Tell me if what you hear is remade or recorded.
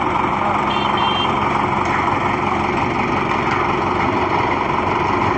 recorded